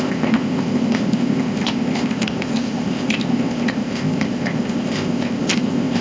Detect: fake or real fake